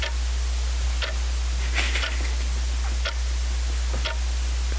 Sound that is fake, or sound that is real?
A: real